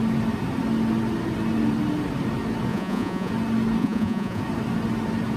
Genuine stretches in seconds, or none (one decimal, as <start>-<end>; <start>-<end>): 0.0-2.7; 3.3-3.8; 4.4-5.4